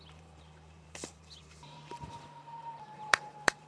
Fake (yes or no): yes